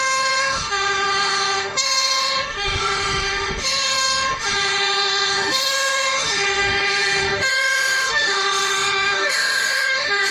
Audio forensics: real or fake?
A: fake